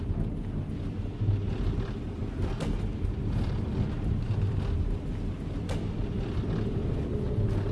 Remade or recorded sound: recorded